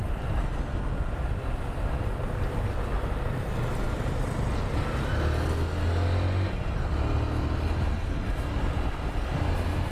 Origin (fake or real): real